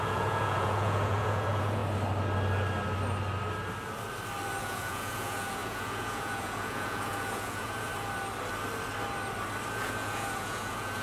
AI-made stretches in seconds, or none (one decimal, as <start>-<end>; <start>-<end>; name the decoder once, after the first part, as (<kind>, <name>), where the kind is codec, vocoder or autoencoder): 0.0-1.8 (vocoder, Vocos); 4.6-7.9; 9.7-11.0